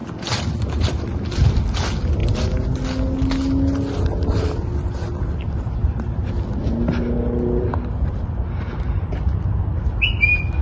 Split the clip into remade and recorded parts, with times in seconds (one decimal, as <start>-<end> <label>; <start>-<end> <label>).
0.0-10.6 recorded